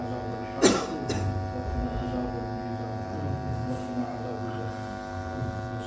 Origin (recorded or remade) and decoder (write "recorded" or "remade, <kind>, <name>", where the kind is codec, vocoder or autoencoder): recorded